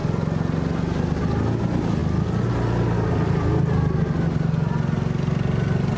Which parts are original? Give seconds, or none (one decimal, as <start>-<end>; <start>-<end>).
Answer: 0.0-6.0